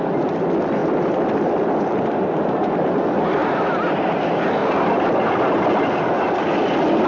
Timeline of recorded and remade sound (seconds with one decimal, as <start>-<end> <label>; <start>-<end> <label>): 0.0-0.8 recorded; 0.8-2.3 remade; 2.3-3.4 recorded; 3.4-4.0 remade; 4.0-7.1 recorded